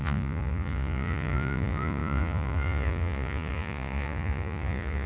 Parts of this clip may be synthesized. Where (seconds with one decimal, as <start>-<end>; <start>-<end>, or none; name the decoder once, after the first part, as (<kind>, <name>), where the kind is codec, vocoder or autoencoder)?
0.0-5.1 (vocoder, Vocos)